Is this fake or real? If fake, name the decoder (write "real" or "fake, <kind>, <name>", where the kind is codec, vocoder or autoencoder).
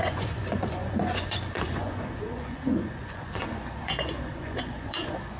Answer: fake, vocoder, Vocos